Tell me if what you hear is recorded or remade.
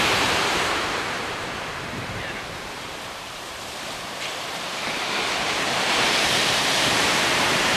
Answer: remade